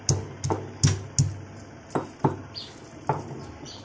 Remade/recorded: recorded